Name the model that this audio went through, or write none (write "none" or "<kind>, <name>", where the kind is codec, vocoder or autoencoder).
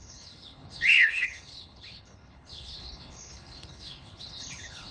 codec, HILCodec